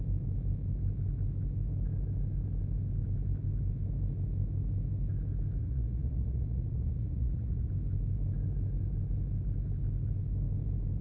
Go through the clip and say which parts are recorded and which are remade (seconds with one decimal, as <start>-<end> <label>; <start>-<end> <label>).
0.0-5.6 recorded; 5.6-7.7 remade; 7.7-11.0 recorded